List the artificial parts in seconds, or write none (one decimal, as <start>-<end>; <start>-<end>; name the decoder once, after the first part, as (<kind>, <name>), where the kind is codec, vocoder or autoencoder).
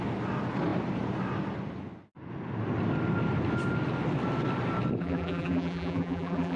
5.0-6.6 (vocoder, BigVGAN v2)